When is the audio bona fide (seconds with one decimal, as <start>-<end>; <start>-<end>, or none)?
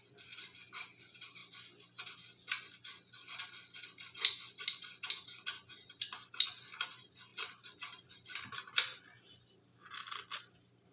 0.0-10.9